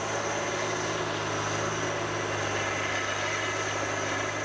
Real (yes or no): yes